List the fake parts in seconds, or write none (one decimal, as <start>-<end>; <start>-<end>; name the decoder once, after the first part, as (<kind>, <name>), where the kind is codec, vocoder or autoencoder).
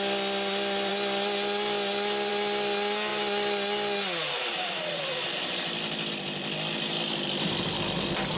none